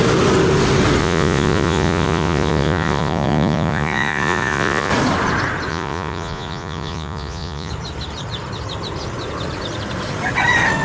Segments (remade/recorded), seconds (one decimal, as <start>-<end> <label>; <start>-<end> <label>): 0.0-1.0 recorded; 1.0-4.9 remade; 4.9-5.7 recorded; 5.7-7.7 remade; 7.7-10.8 recorded